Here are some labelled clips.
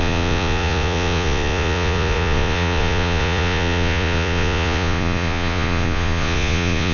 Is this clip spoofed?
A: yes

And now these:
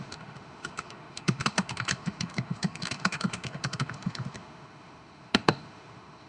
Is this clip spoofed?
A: yes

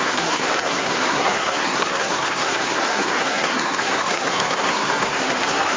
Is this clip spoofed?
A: yes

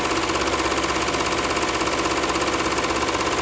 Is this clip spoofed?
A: no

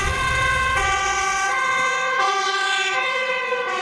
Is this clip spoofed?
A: yes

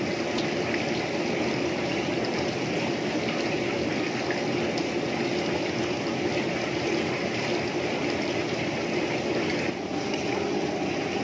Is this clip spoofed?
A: no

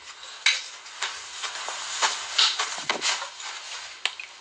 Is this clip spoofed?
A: no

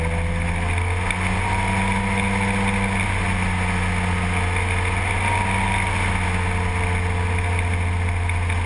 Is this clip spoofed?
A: no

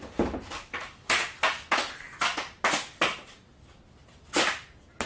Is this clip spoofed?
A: no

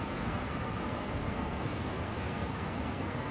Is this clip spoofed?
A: yes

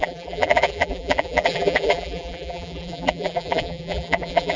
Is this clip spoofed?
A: yes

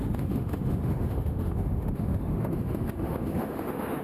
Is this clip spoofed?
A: yes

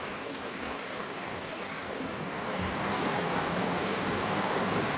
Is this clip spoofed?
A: yes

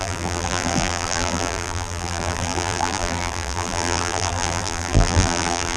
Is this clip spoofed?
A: yes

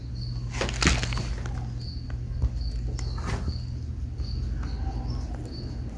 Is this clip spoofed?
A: no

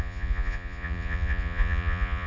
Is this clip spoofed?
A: yes